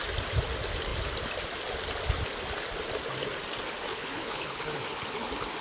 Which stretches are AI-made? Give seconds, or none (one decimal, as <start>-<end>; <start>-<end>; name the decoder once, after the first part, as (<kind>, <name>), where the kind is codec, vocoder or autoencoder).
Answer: 3.9-4.6 (codec, HILCodec)